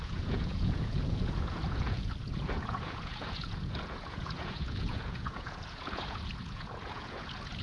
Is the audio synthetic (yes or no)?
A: yes